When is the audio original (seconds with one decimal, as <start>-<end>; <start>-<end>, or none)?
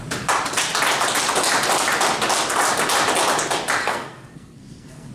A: 0.0-3.8